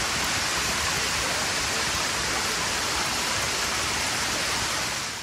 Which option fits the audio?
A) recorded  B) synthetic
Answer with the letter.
A